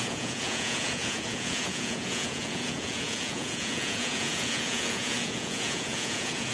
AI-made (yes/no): yes